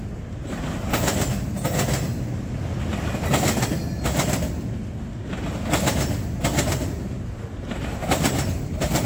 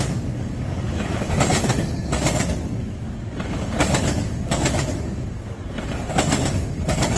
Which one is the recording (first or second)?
first